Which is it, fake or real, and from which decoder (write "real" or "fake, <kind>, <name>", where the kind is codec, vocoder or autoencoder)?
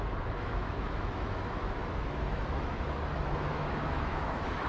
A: fake, autoencoder, DAC-VAE